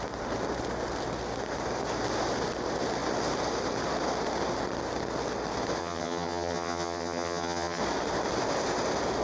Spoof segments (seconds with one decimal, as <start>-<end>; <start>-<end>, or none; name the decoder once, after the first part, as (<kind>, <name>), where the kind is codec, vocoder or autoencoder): 5.8-7.8 (vocoder, HiFi-GAN)